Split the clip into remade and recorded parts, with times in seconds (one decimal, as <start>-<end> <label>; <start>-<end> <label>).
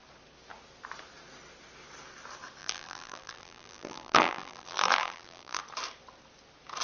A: 0.0-2.6 recorded; 2.6-5.6 remade; 5.6-6.8 recorded